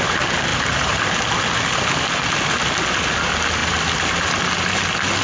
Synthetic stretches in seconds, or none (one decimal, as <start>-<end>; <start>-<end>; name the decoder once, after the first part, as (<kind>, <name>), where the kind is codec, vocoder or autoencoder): 0.5-1.1 (vocoder, BigVGAN v2); 3.6-4.1